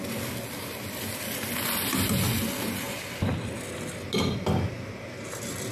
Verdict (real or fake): real